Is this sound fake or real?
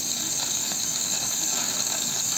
fake